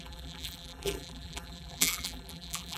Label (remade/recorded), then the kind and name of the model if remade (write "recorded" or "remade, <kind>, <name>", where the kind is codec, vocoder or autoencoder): remade, vocoder, BigVGAN v2